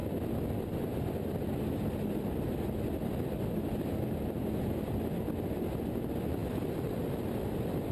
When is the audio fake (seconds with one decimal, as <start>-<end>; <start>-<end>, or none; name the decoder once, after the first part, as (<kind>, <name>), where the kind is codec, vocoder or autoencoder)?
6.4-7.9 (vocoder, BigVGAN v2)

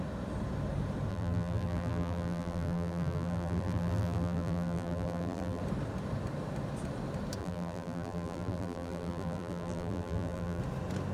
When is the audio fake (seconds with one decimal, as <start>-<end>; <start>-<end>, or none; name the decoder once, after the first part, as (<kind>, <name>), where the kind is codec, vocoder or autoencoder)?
1.1-5.6 (vocoder, BigVGAN v2); 7.4-10.6

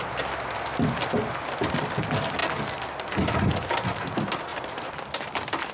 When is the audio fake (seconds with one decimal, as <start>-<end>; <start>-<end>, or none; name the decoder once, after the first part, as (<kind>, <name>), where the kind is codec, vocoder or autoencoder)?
4.5-5.7 (vocoder, BigVGAN v2)